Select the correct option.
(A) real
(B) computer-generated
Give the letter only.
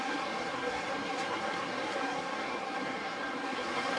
B